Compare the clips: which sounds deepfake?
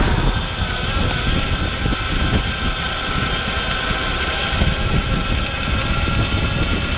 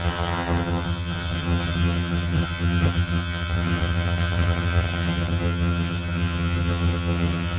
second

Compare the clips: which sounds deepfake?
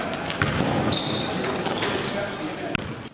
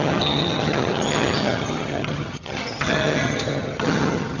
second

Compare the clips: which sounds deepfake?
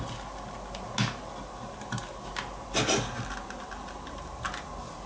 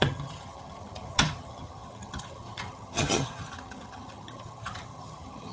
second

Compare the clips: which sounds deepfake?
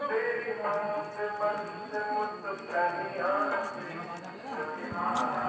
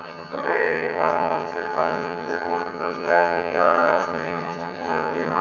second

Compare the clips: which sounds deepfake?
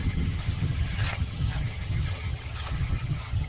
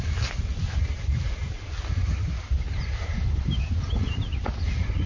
first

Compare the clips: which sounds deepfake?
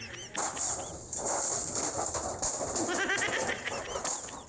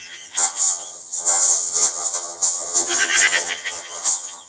second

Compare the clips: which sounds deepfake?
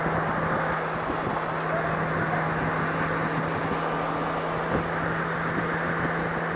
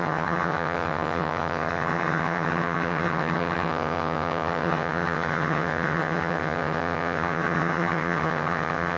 second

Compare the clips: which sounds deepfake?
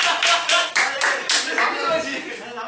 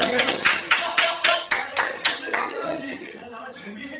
second